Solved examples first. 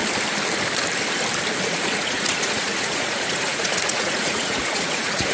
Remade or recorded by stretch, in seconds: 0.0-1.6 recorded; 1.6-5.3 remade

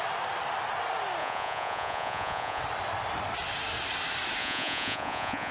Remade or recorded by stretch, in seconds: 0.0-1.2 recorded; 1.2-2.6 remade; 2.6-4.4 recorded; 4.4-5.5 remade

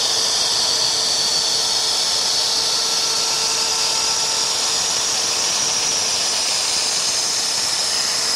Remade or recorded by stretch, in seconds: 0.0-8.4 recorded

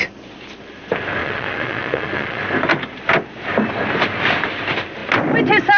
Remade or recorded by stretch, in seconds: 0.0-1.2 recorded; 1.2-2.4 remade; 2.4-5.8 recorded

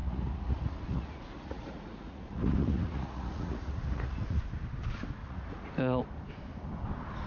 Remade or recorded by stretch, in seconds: 0.0-4.4 remade; 4.4-5.2 recorded; 5.2-5.7 remade; 5.7-7.3 recorded